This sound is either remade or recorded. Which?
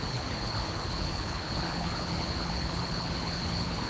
remade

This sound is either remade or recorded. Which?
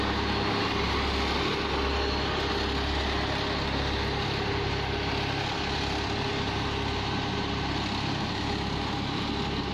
recorded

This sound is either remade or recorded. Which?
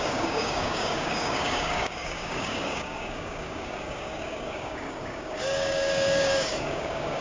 remade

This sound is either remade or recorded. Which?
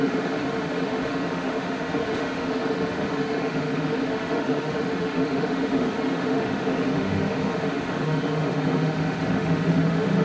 remade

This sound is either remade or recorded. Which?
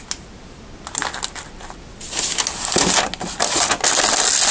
recorded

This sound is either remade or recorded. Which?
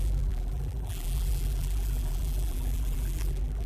remade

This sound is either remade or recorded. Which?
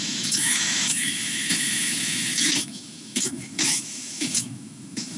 remade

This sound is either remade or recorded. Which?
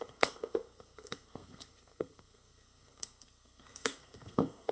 remade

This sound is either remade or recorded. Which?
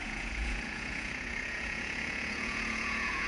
remade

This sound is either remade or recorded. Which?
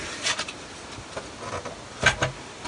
recorded